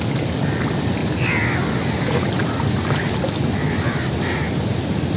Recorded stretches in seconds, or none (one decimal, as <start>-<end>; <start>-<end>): 0.0-5.2